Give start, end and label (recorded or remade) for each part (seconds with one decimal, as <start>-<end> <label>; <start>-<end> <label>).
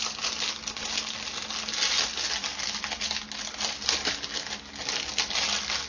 0.0-5.9 recorded